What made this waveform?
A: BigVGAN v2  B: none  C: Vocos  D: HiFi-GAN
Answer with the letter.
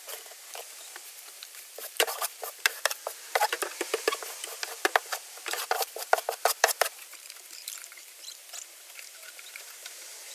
A